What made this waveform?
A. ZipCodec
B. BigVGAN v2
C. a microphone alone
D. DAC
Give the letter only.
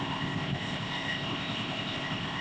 A